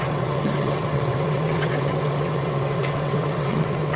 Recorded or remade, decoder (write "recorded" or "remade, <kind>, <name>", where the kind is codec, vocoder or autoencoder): remade, vocoder, WaveNeXt